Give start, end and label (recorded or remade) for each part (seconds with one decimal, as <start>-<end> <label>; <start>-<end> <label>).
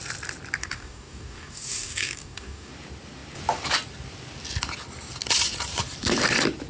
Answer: 0.0-0.6 recorded; 0.6-2.7 remade; 2.7-6.7 recorded